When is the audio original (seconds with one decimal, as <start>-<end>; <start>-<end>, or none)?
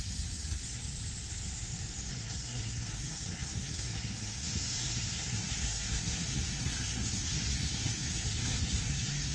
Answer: 0.8-2.1